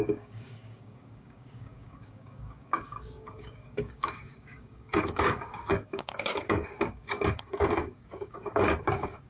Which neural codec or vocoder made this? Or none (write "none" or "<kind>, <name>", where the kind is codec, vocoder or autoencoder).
codec, DAC